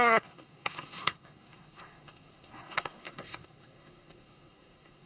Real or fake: fake